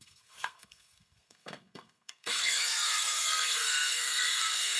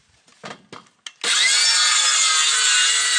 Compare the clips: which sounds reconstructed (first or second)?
first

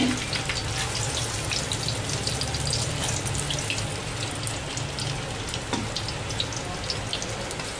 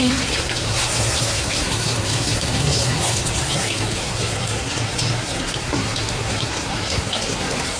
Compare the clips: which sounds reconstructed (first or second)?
second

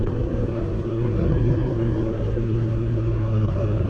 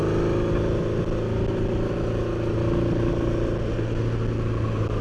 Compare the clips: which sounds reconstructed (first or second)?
first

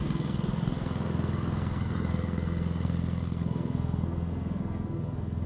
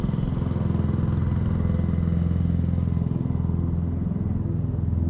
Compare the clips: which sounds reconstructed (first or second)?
first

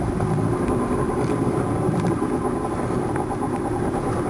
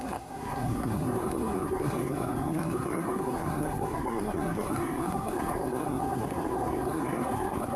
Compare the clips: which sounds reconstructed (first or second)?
second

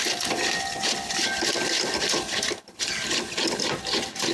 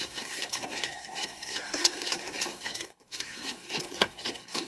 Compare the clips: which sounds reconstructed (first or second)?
second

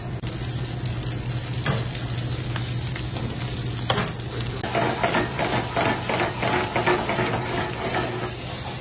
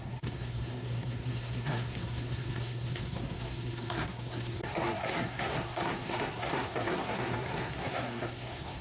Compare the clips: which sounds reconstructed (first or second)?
second